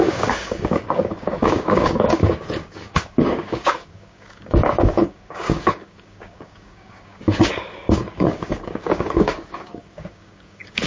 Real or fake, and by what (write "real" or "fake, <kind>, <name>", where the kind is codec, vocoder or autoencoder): fake, codec, DAC